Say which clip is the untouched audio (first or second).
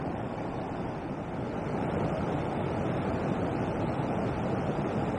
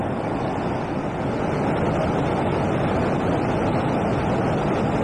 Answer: second